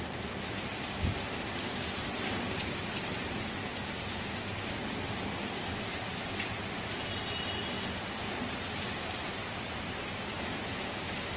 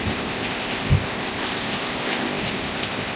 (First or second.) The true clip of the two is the first